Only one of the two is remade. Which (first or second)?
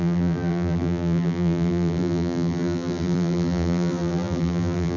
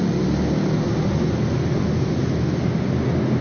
first